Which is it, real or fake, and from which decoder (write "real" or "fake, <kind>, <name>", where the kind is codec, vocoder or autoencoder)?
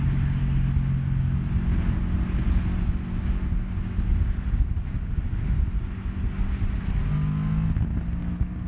real